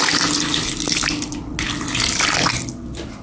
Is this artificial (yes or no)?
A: no